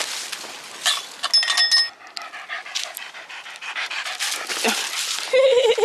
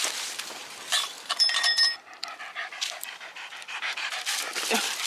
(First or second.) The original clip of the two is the first